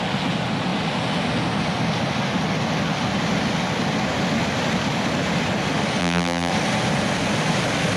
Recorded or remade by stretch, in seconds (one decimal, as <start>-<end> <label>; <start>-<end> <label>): 0.0-6.0 recorded; 6.0-6.5 remade; 6.5-8.0 recorded